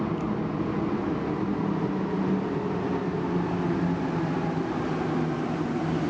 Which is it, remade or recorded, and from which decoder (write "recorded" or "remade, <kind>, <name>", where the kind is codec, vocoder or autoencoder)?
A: recorded